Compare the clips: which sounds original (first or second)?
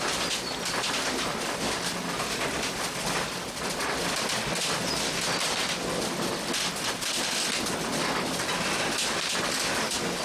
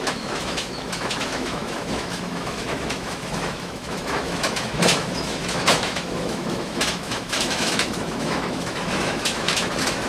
first